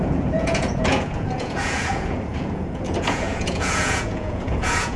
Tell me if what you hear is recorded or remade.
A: remade